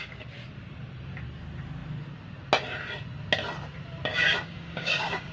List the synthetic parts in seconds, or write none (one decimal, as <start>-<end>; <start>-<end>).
4.1-5.3